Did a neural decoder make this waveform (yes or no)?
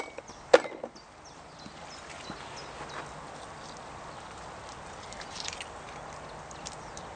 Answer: no